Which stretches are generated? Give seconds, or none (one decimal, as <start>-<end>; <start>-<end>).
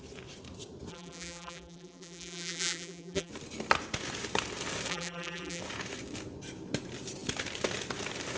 0.9-3.3; 4.9-5.6